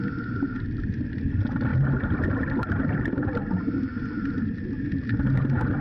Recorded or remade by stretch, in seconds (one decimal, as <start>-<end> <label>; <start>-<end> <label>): 0.0-5.8 recorded